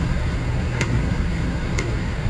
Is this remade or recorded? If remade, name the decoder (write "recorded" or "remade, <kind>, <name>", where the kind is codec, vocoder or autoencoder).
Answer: remade, codec, SNAC